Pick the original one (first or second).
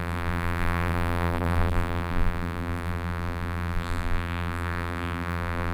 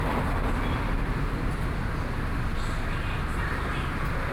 second